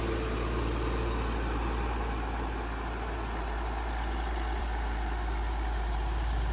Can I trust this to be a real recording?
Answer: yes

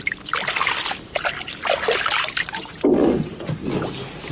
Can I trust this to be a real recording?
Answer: yes